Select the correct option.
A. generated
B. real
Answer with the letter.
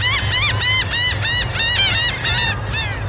B